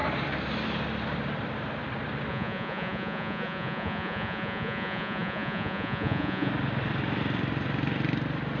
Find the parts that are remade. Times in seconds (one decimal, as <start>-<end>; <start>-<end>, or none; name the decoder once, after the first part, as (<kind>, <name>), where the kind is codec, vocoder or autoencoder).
2.3-6.5 (vocoder, Vocos)